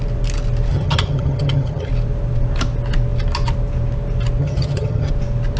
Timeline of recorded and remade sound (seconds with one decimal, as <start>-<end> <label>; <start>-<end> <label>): 0.0-0.7 recorded; 0.7-1.9 remade; 1.9-4.4 recorded; 4.4-5.1 remade; 5.1-5.6 recorded